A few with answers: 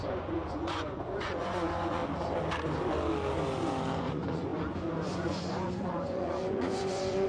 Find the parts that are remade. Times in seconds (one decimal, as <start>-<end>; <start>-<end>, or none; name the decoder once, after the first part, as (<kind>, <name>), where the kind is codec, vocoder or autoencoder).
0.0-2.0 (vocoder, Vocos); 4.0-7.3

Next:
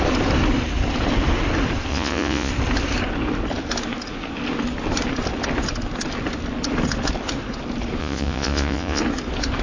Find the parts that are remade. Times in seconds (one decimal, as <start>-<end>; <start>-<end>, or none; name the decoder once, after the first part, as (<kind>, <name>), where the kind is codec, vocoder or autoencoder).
1.9-2.5 (vocoder, Vocos); 8.0-9.0

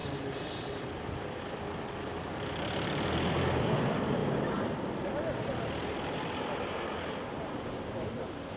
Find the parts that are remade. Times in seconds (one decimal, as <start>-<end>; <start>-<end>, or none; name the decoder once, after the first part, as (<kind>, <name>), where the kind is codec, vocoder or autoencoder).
none

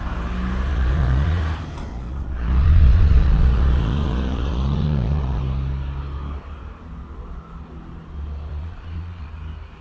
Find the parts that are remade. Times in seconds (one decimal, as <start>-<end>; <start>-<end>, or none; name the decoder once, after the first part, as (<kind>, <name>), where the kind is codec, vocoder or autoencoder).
0.7-1.4 (vocoder, Vocos); 1.9-5.4; 8.5-9.3

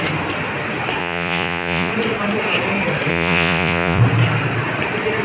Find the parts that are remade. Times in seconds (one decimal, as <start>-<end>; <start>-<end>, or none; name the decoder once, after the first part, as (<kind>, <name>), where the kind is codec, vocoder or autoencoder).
1.0-1.9 (vocoder, Vocos); 3.1-4.0

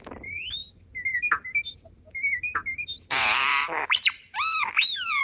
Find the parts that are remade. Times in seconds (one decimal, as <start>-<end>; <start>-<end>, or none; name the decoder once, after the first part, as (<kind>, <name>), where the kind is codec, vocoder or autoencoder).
none

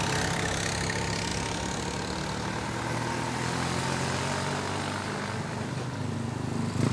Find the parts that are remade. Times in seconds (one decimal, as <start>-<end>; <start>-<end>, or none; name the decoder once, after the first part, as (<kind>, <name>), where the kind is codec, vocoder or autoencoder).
none